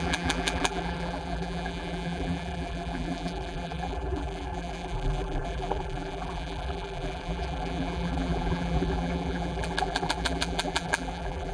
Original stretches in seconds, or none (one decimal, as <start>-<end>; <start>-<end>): none